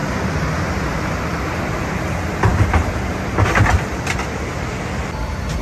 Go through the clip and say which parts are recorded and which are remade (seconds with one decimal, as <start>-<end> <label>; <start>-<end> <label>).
0.0-5.6 recorded